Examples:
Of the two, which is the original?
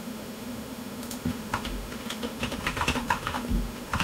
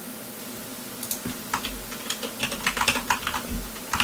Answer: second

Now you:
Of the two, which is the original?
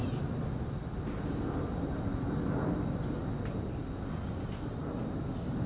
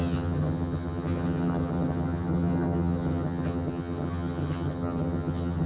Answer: first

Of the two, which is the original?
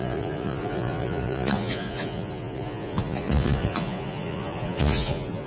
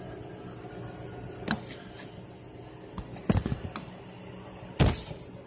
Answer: second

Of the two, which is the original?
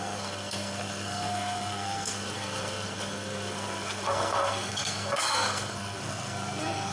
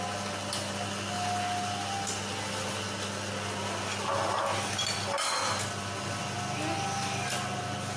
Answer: second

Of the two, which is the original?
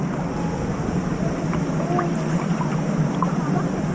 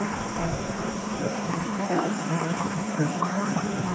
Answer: first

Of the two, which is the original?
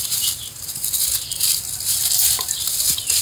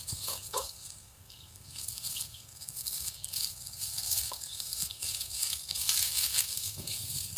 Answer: first